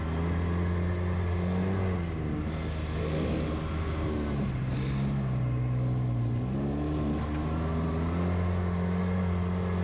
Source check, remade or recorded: recorded